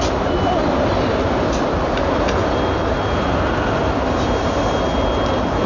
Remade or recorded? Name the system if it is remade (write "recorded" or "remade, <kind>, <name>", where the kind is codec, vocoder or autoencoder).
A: recorded